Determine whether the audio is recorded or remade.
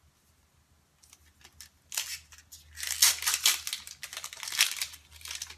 recorded